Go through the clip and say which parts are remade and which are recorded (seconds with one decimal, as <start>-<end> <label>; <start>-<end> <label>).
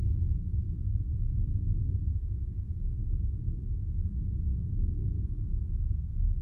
0.0-1.1 recorded; 1.1-2.1 remade; 2.1-3.0 recorded; 3.0-3.8 remade; 3.8-6.4 recorded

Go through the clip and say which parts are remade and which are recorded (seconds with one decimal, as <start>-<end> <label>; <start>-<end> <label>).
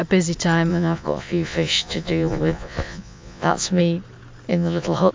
0.0-0.7 recorded; 0.7-3.8 remade; 3.8-4.5 recorded; 4.5-5.1 remade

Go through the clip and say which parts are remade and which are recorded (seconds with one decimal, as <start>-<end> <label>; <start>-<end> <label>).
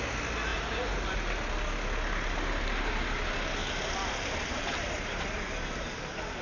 0.0-0.5 recorded; 0.5-1.4 remade; 1.4-3.6 recorded; 3.6-5.2 remade; 5.2-6.4 recorded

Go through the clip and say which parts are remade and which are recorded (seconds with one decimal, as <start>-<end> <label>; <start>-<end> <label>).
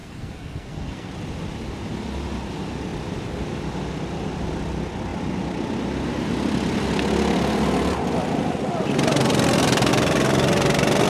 0.0-1.1 remade; 1.1-11.1 recorded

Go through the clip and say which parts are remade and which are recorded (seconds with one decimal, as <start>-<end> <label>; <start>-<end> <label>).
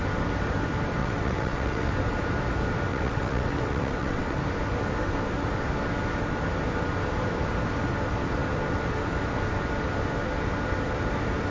0.0-1.0 recorded; 1.0-1.9 remade; 1.9-2.9 recorded; 2.9-4.4 remade; 4.4-11.5 recorded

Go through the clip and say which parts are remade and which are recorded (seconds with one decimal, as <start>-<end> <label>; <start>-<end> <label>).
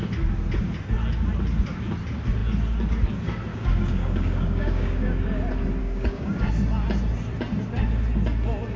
0.0-3.5 recorded; 3.5-5.2 remade; 5.2-5.8 recorded; 5.8-6.5 remade; 6.5-8.8 recorded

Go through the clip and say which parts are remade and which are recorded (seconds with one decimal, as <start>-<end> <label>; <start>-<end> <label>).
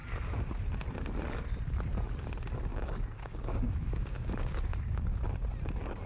0.0-2.7 recorded; 2.7-5.1 remade; 5.1-6.1 recorded